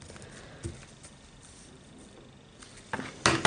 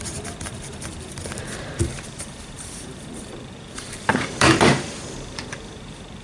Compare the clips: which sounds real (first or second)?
first